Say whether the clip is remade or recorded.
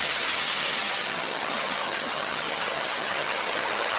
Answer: remade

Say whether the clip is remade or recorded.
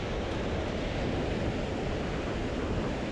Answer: recorded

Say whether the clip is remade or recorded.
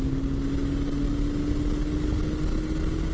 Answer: recorded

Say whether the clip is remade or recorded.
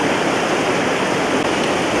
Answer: recorded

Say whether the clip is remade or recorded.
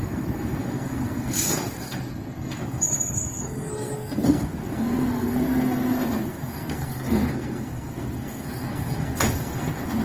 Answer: remade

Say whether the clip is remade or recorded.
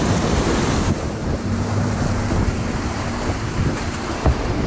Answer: remade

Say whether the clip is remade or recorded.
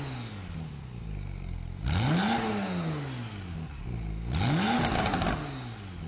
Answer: recorded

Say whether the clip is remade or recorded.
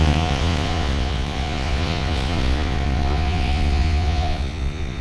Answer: remade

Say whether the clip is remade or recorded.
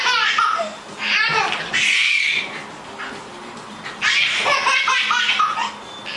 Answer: recorded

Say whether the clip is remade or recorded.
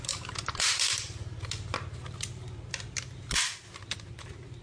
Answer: recorded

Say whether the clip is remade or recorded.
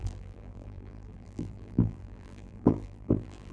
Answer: remade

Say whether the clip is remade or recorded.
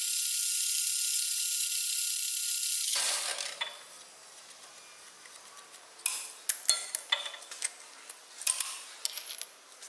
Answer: recorded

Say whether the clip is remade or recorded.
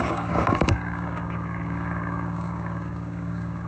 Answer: remade